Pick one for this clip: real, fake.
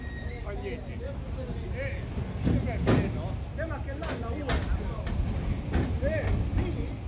real